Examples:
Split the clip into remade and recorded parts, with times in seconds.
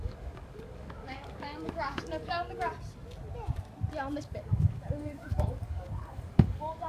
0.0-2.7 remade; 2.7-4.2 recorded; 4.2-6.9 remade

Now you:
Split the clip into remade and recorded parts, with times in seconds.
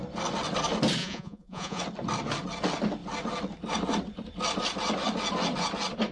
0.0-1.0 recorded; 1.0-1.8 remade; 1.8-6.1 recorded